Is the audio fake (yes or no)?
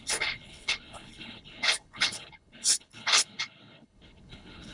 yes